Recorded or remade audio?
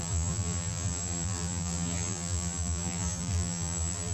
remade